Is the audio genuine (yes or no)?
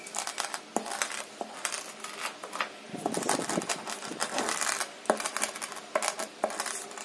yes